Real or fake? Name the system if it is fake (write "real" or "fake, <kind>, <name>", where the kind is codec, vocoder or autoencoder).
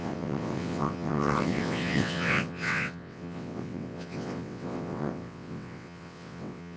fake, vocoder, WaveNeXt